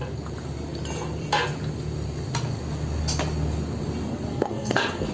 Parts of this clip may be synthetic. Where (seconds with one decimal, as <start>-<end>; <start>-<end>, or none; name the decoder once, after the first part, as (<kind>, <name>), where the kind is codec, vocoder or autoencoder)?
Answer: 4.3-5.1 (codec, SNAC)